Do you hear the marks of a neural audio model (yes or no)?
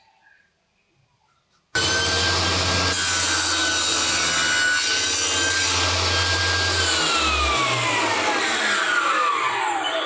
no